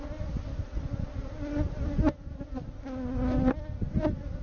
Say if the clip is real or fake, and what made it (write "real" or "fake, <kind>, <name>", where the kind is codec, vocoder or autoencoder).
real